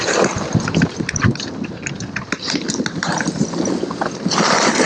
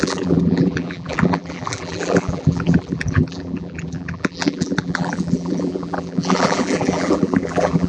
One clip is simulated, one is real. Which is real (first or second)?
first